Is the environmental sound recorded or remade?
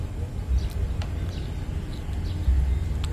recorded